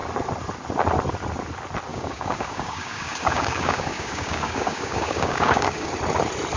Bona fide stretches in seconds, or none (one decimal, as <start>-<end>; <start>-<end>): 0.0-1.9; 5.9-6.6